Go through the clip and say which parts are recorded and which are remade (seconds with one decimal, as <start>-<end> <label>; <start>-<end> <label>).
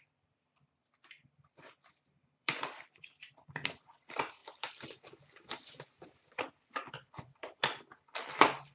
0.0-8.7 remade